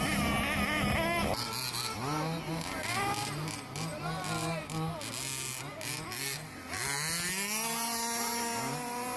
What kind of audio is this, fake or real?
real